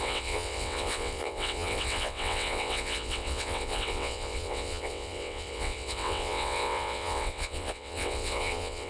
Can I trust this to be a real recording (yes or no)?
no